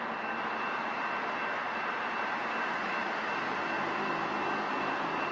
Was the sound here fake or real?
real